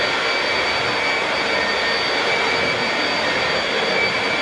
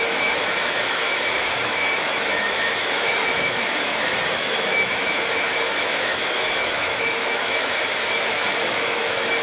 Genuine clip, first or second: first